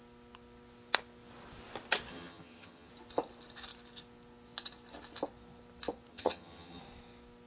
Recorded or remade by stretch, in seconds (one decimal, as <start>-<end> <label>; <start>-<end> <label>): 0.0-2.1 recorded; 2.1-2.9 remade; 2.9-6.1 recorded; 6.1-6.8 remade; 6.8-7.5 recorded